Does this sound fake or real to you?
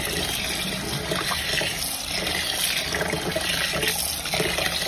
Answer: real